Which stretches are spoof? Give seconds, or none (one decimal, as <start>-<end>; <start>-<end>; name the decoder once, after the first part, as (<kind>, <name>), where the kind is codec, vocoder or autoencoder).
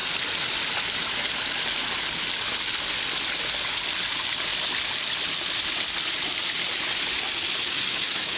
7.6-8.4 (autoencoder, DAC-VAE)